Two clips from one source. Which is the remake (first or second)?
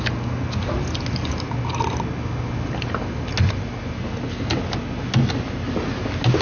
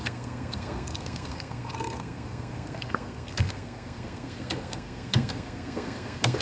second